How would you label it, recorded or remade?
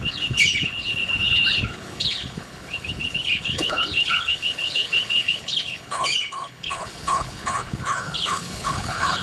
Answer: remade